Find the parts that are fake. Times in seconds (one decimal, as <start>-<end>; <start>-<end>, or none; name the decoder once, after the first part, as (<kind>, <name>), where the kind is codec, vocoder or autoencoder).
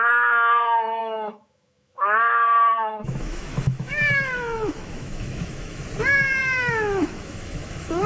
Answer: 1.0-5.8 (autoencoder, DAC-VAE); 6.4-8.1